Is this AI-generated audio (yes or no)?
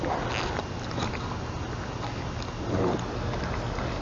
no